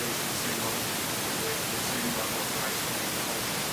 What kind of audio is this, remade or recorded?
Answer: recorded